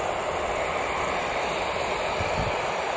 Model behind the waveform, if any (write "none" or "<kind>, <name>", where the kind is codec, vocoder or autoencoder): none